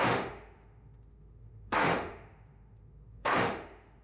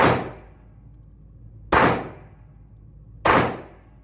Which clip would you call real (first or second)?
second